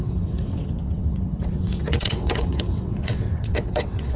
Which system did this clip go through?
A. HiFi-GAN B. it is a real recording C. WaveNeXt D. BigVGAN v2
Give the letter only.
C